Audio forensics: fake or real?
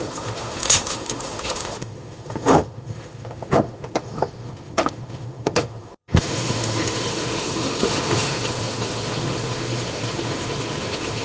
fake